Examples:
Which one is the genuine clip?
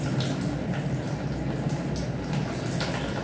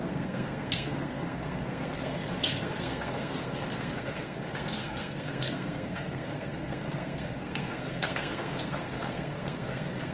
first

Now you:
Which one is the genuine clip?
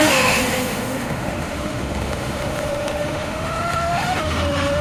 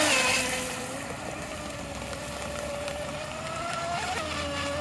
second